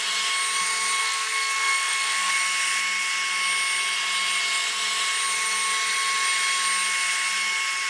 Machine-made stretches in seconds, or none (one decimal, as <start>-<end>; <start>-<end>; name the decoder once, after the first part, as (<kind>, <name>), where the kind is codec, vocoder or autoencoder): 1.0-2.3 (codec, SNAC)